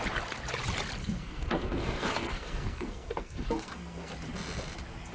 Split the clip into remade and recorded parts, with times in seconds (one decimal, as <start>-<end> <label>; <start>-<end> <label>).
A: 0.0-1.0 recorded; 1.0-4.1 remade; 4.1-5.1 recorded